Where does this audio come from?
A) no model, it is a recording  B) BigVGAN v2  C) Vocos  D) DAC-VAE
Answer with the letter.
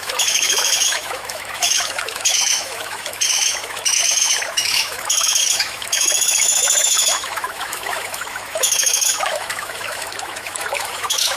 D